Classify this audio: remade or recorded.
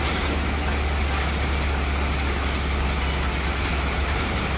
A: recorded